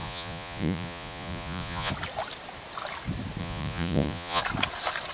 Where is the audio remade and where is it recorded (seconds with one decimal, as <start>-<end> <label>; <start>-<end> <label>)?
0.0-1.9 remade; 1.9-3.4 recorded; 3.4-4.4 remade; 4.4-5.1 recorded